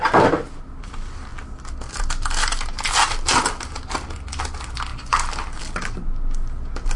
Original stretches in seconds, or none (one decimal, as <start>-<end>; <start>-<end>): 0.0-7.0